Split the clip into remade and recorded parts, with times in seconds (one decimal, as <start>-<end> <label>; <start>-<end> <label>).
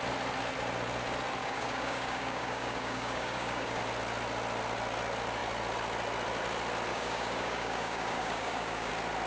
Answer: 0.0-1.4 recorded; 1.4-3.8 remade; 3.8-6.9 recorded; 6.9-8.9 remade; 8.9-9.3 recorded